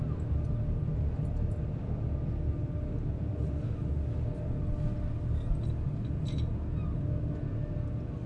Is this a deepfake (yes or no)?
no